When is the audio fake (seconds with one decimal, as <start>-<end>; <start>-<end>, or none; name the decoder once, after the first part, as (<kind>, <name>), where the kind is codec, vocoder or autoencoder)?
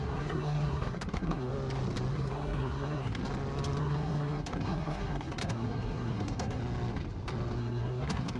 0.0-1.5 (codec, SNAC); 2.1-3.2; 3.8-6.6; 7.6-8.4